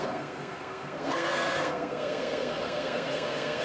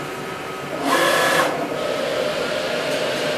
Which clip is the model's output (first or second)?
first